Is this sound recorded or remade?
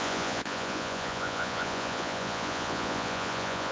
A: remade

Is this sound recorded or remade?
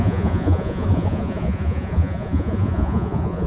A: remade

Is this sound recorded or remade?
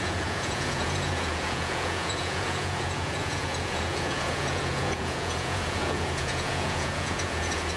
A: remade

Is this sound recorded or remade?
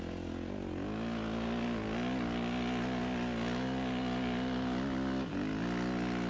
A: recorded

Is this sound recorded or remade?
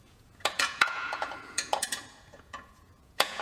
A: remade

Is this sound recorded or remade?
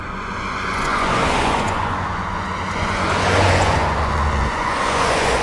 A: remade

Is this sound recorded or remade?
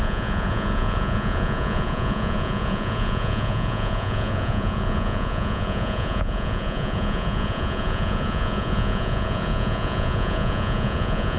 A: remade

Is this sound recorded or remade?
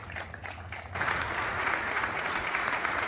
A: remade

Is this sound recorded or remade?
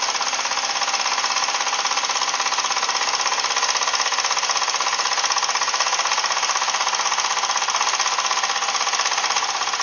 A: recorded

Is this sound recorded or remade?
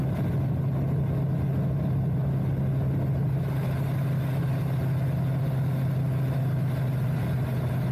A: recorded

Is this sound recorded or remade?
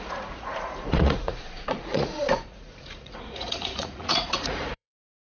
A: remade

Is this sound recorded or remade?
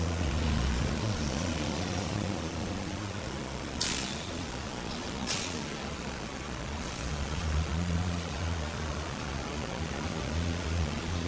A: remade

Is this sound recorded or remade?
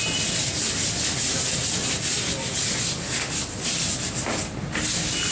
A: recorded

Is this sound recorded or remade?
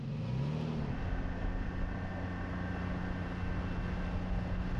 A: recorded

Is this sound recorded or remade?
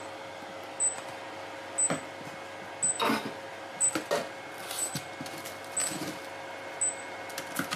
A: recorded